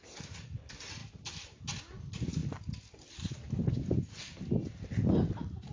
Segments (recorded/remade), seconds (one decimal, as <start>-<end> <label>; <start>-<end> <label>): 0.0-1.0 recorded; 1.0-1.6 remade; 1.6-5.7 recorded